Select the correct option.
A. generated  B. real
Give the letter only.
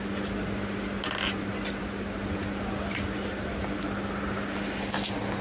B